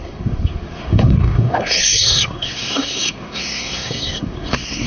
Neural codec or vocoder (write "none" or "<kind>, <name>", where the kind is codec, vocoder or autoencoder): codec, SNAC